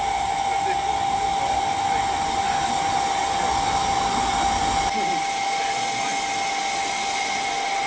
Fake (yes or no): no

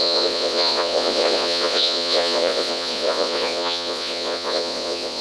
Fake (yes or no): yes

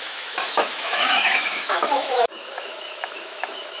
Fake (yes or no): yes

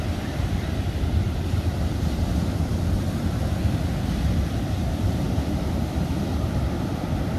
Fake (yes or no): yes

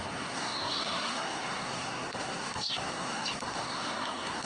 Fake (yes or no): yes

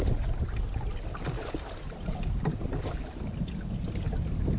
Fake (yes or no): no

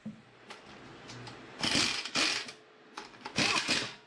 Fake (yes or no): no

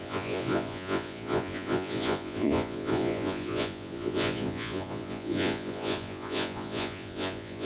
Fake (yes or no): yes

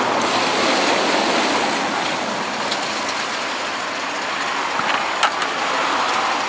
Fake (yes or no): no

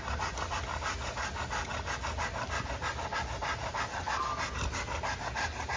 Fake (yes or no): no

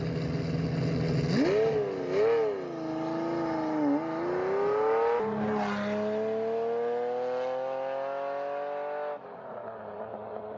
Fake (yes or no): no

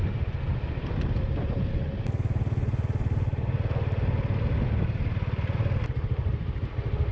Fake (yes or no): no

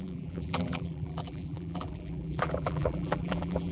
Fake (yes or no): yes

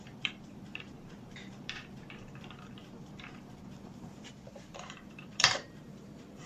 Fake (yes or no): yes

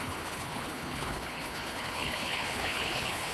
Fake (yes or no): yes